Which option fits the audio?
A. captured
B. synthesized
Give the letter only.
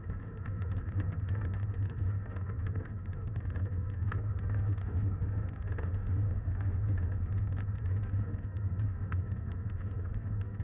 B